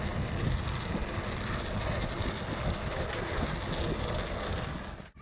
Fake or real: real